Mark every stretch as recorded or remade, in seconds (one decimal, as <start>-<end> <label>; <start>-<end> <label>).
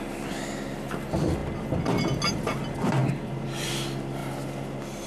0.0-3.0 recorded; 3.0-3.7 remade; 3.7-5.1 recorded